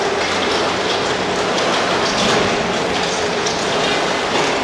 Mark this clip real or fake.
real